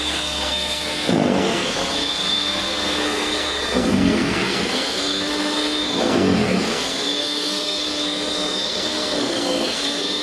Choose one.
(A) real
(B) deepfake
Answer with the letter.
B